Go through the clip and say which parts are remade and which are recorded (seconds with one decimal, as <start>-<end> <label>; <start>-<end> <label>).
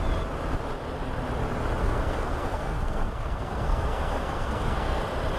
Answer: 0.0-1.8 recorded; 1.8-5.0 remade; 5.0-5.4 recorded